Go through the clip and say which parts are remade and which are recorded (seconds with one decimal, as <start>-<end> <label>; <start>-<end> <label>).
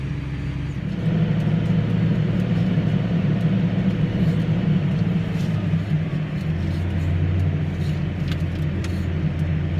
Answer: 0.0-2.1 recorded; 2.1-6.1 remade; 6.1-9.8 recorded